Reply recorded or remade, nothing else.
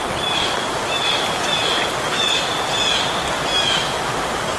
recorded